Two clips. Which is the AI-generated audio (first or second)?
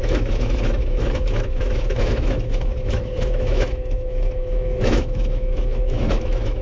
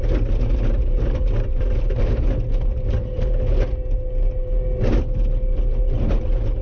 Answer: first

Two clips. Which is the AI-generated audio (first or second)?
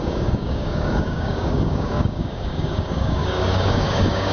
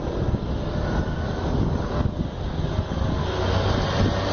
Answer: first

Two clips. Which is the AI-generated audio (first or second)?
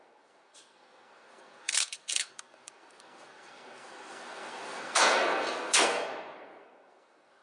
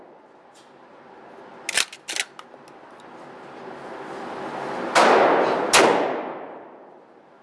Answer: first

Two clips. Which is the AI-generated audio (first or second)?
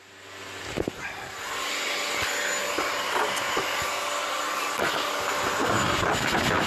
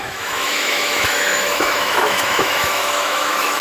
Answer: second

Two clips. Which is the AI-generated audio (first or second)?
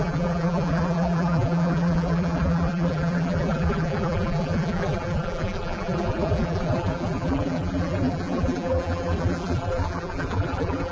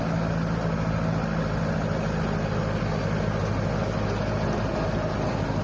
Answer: first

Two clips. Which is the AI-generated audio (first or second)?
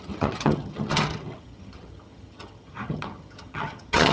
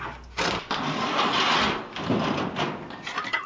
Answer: first